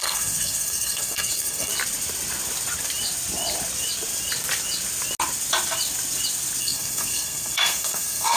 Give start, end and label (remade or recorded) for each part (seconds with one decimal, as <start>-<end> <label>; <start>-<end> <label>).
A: 0.0-1.7 remade; 1.7-6.6 recorded; 6.6-8.4 remade